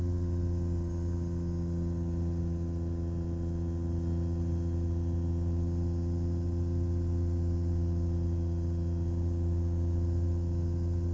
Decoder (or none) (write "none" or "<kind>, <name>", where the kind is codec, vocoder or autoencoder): none